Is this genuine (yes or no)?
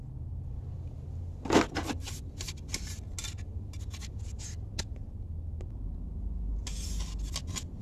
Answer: yes